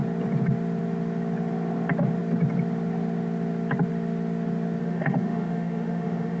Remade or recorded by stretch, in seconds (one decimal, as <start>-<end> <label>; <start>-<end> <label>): 0.0-4.8 recorded; 4.8-6.4 remade